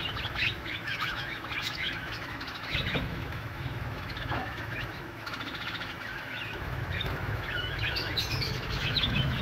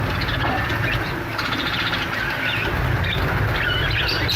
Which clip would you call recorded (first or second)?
second